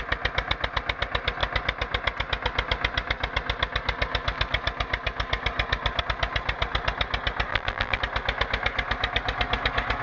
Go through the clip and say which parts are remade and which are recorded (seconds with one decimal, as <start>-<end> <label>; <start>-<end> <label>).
0.0-7.5 recorded; 7.5-8.0 remade; 8.0-10.0 recorded